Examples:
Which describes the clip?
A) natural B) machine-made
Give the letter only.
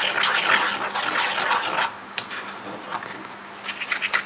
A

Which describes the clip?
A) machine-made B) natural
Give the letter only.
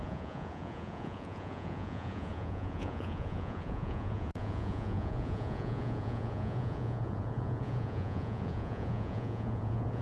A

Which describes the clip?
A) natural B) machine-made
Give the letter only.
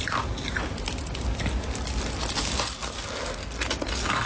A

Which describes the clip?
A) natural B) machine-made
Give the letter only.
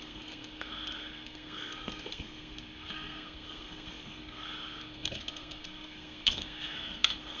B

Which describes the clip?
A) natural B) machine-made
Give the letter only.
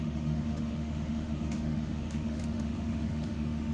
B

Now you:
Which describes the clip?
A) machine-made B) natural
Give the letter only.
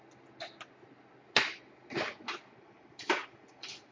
B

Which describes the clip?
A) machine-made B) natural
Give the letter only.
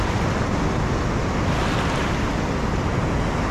B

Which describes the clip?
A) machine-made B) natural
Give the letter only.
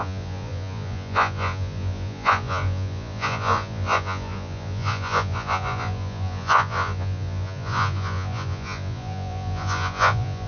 A